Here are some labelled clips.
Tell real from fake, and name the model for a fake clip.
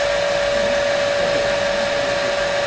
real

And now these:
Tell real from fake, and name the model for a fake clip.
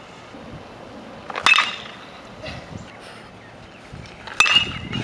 real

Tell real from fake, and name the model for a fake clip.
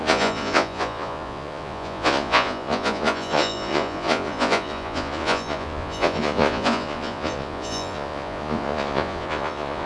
fake, vocoder, Vocos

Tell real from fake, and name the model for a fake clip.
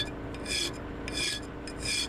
real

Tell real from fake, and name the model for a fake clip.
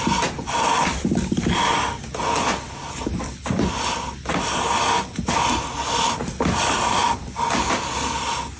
real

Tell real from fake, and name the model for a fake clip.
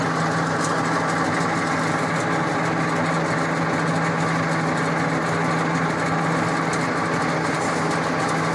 real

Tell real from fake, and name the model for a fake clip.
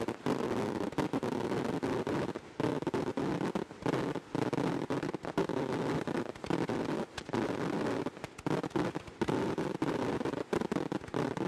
real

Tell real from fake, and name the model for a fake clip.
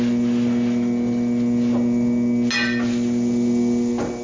real